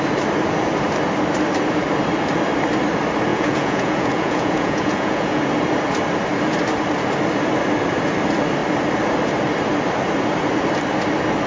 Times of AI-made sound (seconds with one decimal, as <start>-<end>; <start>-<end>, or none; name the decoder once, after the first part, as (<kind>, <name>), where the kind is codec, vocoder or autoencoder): 3.3-5.4 (vocoder, Vocos)